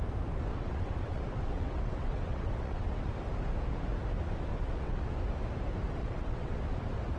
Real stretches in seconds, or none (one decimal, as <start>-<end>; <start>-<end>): 0.0-0.5; 3.1-4.5; 5.1-6.0; 6.6-7.2